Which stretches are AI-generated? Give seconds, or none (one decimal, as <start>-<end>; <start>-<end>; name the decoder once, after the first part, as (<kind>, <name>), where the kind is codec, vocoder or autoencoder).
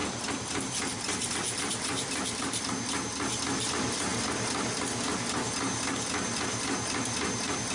0.0-2.7 (vocoder, BigVGAN v2)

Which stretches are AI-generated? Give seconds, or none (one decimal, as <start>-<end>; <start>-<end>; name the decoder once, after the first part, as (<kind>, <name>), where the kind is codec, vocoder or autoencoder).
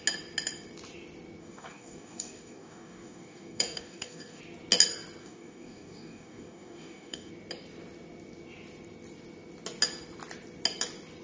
1.4-4.4 (codec, DAC); 5.2-7.3